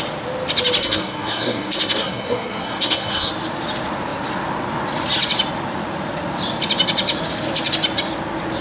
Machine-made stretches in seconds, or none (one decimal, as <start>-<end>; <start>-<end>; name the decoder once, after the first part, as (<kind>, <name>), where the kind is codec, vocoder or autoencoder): 0.8-3.3 (codec, SNAC)